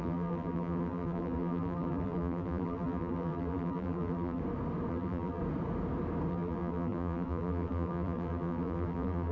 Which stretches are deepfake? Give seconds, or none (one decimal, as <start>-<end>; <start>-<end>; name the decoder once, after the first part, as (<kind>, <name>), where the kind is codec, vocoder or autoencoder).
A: 0.0-4.4 (vocoder, BigVGAN v2); 4.9-5.4; 6.3-9.3